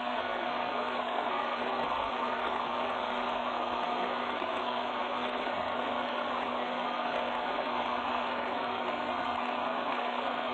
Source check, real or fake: fake